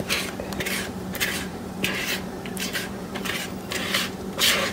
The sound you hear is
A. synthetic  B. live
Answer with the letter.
A